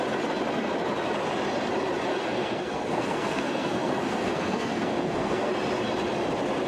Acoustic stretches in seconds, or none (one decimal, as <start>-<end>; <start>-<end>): 0.0-2.1; 5.5-6.7

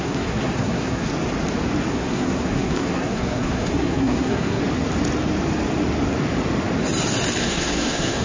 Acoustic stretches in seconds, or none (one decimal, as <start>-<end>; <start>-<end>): 1.1-1.9; 4.6-7.4

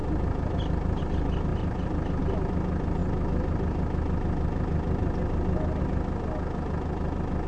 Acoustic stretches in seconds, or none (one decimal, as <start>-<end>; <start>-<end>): 0.0-7.5

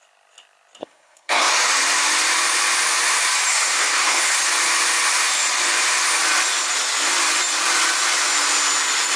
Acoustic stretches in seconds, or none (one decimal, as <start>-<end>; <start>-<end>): 0.0-0.8; 1.5-3.5; 4.4-9.2

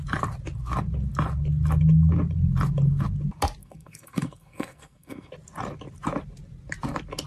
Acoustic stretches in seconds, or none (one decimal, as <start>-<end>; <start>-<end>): 0.0-3.6; 5.3-7.3

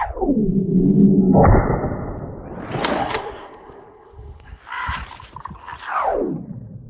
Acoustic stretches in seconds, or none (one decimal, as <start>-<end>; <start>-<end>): 0.0-3.0; 4.6-6.9

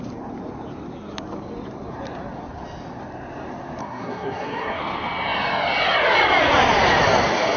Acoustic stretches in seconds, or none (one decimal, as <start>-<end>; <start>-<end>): 0.0-3.8; 4.8-7.6

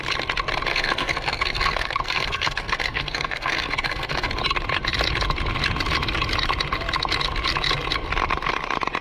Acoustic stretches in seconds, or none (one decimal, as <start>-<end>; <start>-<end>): 0.0-0.7; 4.3-9.0